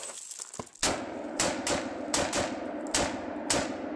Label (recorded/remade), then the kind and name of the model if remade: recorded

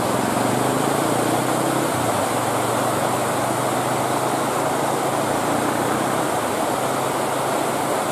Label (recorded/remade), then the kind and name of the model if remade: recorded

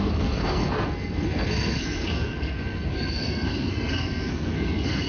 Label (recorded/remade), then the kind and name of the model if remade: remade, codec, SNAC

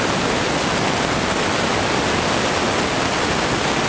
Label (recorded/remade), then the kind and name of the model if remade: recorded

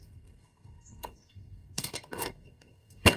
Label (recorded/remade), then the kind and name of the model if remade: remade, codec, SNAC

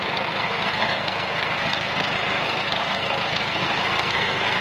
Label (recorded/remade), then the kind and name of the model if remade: remade, codec, SNAC